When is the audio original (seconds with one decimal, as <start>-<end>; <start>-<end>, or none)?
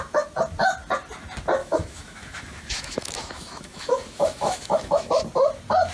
0.0-1.6; 5.1-5.9